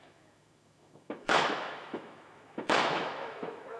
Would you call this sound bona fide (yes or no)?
no